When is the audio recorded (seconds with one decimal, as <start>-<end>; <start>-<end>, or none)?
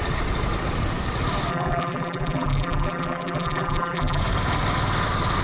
0.0-1.5; 4.2-5.4